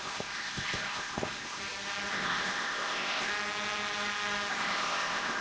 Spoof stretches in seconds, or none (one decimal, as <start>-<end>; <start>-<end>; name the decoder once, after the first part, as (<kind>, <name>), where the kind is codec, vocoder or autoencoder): 0.0-1.6 (codec, ZipCodec); 2.1-3.3; 4.5-5.4